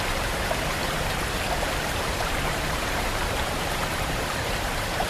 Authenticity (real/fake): fake